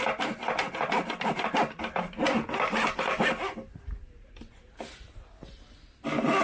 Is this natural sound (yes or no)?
yes